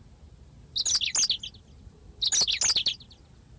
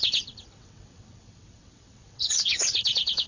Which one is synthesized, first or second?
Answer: second